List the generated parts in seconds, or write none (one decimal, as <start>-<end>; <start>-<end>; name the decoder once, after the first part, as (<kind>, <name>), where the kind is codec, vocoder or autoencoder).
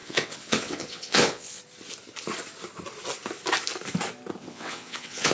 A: 0.0-1.6 (vocoder, WaveNeXt); 4.4-5.3